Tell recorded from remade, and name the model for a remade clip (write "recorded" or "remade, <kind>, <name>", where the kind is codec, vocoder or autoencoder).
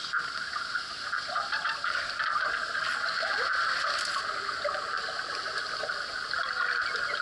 recorded